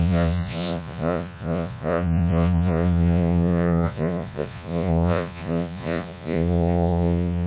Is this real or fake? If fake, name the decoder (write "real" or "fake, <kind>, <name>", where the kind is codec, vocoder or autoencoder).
fake, vocoder, Vocos